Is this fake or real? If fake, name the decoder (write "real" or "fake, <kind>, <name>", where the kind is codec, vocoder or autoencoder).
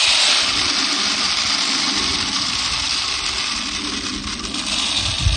real